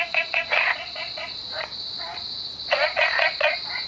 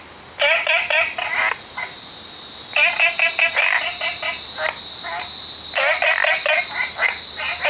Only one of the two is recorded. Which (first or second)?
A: second